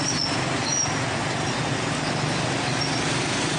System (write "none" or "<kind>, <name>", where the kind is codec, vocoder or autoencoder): none